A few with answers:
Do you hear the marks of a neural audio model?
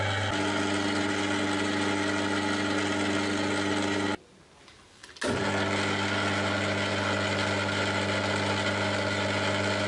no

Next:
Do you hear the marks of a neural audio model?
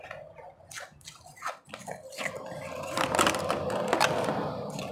yes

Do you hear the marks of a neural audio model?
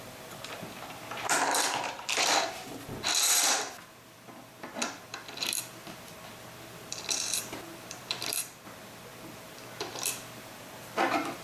yes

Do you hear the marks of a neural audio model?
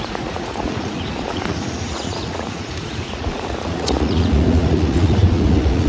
yes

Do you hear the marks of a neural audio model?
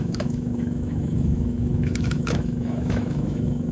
yes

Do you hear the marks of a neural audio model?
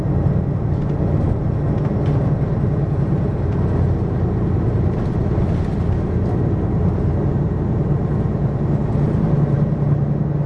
no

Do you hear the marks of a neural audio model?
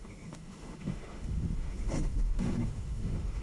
yes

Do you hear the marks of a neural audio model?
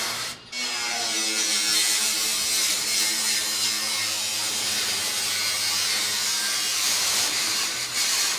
yes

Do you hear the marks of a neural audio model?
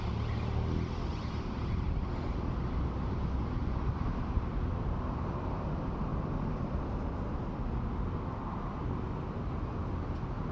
no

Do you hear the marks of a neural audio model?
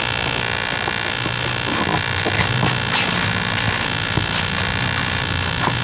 no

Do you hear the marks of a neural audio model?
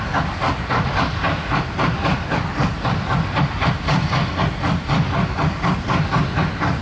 no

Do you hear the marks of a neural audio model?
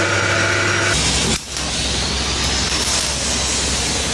no